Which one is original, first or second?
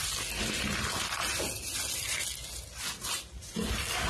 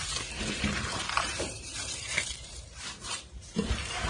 first